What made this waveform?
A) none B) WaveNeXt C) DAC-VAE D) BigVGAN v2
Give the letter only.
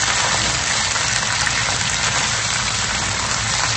A